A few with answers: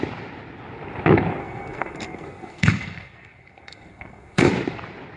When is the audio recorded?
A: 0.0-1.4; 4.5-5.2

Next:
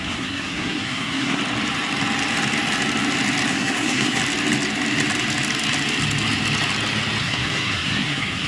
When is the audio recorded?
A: 1.4-3.5; 4.2-7.2

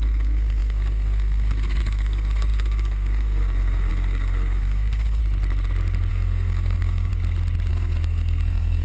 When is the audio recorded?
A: 5.2-6.1; 7.1-7.7

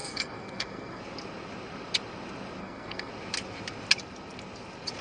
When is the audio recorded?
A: 1.0-2.6; 3.1-5.0

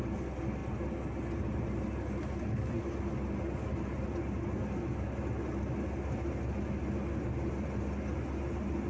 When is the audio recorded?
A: 0.0-8.9

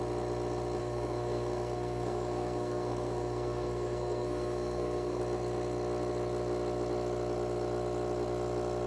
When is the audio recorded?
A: 0.0-0.8; 5.2-8.9

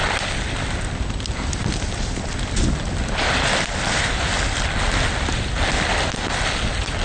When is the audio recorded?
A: 0.0-7.0

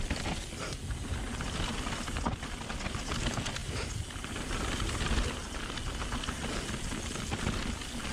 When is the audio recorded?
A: 0.0-8.1